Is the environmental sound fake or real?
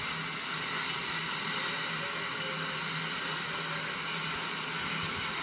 real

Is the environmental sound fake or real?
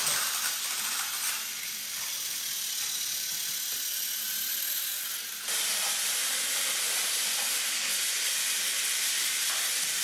real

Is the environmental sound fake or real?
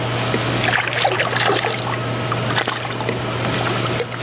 real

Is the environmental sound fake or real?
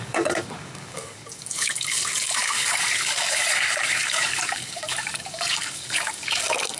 fake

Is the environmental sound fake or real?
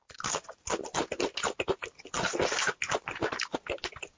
real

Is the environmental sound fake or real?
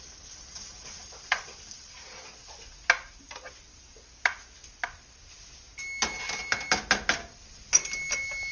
real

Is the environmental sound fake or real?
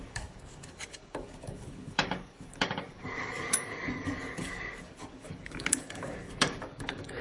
fake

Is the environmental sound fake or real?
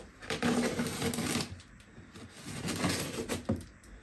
real